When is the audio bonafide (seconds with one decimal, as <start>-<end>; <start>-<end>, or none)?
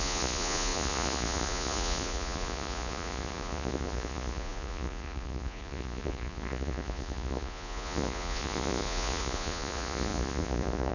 none